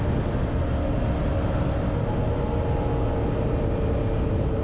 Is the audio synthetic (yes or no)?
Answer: no